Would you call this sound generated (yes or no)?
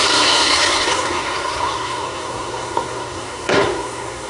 yes